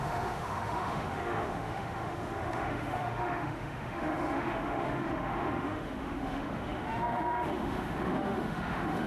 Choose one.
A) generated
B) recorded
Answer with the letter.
A